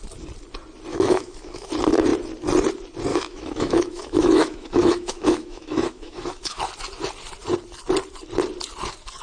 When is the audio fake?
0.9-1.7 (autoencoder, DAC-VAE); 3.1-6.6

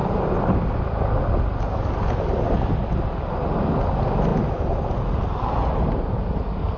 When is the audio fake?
none

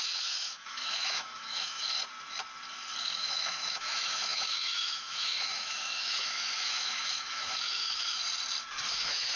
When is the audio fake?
0.0-1.8 (autoencoder, DAC-VAE); 3.0-8.2; 8.9-9.4

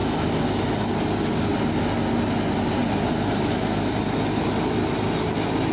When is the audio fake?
none

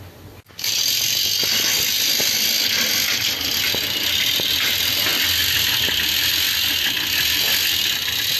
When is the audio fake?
none

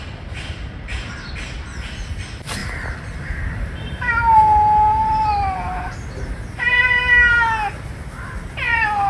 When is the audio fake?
none

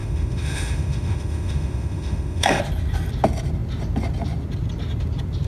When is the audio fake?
0.0-2.6 (autoencoder, DAC-VAE)

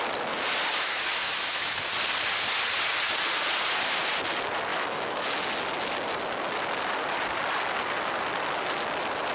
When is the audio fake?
0.7-1.9 (autoencoder, DAC-VAE); 4.7-5.3